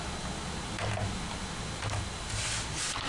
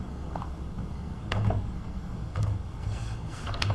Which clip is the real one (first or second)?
first